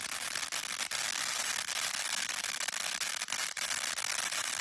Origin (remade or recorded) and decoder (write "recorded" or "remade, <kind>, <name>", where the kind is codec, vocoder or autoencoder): recorded